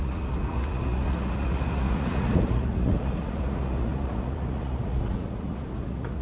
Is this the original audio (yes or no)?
no